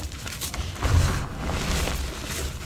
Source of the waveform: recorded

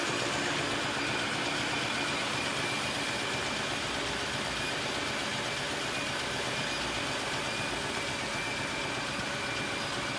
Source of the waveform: recorded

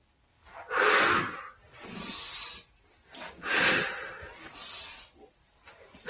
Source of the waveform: recorded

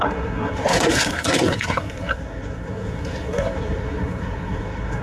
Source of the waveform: remade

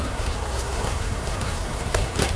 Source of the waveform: remade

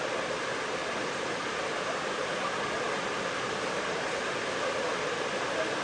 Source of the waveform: recorded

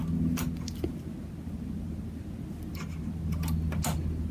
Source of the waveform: recorded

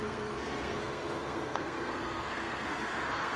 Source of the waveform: remade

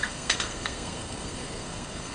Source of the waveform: remade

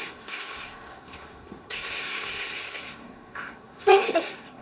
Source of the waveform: remade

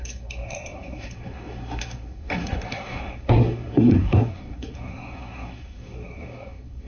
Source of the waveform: remade